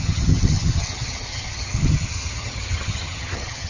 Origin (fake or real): fake